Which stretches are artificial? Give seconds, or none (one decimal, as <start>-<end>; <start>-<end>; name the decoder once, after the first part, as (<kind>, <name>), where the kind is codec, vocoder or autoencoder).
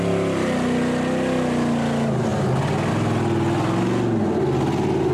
none